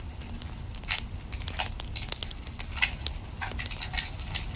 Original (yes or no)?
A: yes